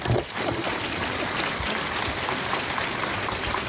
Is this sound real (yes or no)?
yes